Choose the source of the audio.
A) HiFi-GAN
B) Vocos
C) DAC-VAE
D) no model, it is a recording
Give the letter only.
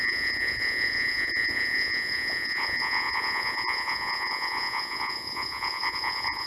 B